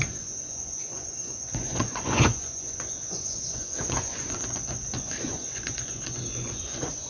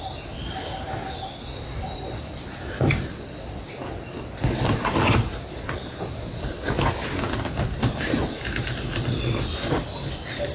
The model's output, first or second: first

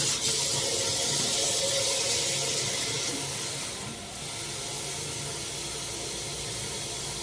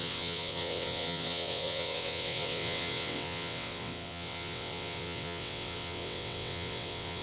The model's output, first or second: second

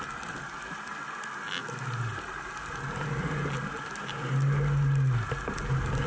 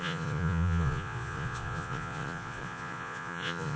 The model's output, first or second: second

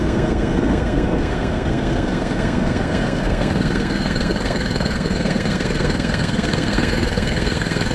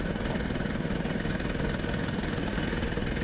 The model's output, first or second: first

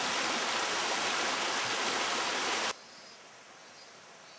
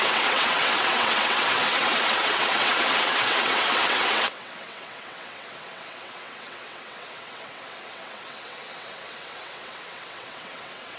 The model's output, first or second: second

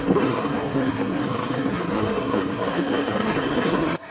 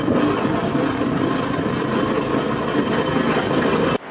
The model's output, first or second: first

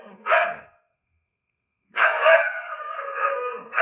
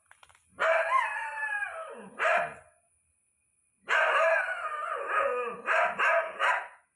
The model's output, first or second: first